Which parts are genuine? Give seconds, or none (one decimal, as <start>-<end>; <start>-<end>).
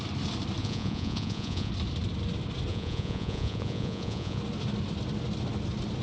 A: 0.0-0.6; 1.7-2.7; 4.4-6.0